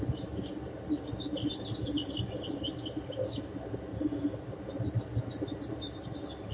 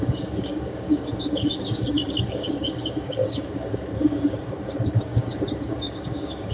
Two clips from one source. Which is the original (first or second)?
first